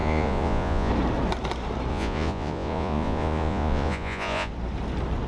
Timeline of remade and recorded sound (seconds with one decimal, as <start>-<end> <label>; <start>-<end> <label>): 0.0-0.9 remade; 0.9-1.9 recorded; 1.9-4.5 remade; 4.5-5.3 recorded